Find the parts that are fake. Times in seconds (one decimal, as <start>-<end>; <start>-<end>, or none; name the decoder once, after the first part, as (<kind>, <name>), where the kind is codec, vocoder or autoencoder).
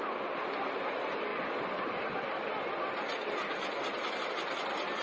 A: none